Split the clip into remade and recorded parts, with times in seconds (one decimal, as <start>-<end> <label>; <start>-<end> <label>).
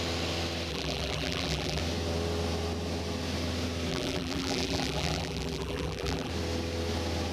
0.0-0.7 recorded; 0.7-1.8 remade; 1.8-3.9 recorded; 3.9-6.3 remade; 6.3-7.3 recorded